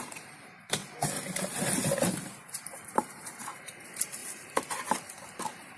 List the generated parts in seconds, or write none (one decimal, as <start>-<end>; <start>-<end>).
0.0-0.8; 2.4-4.2; 5.0-5.8